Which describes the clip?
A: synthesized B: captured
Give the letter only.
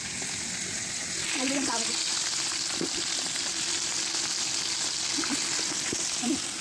B